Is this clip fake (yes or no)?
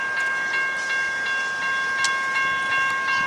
no